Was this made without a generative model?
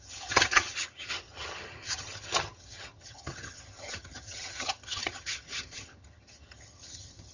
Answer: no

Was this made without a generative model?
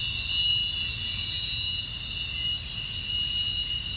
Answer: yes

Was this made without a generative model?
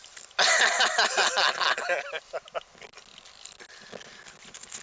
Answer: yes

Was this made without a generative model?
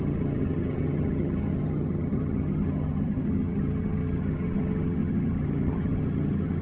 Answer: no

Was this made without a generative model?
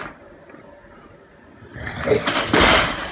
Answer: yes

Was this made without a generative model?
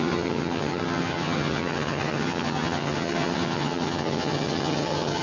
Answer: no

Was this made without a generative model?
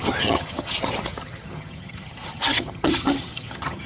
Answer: no